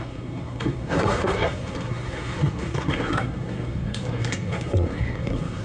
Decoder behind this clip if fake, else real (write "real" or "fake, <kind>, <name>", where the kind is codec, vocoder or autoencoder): fake, codec, SNAC